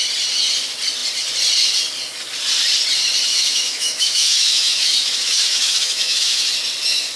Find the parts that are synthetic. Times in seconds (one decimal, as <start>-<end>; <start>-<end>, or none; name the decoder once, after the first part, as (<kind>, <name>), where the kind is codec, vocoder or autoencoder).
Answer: 3.3-6.5 (autoencoder, DAC-VAE)